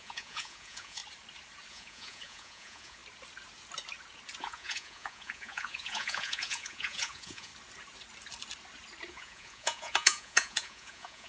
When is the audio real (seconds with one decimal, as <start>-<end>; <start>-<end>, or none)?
1.0-1.7; 3.0-4.4; 7.5-9.1